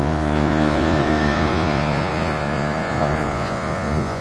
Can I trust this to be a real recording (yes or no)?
no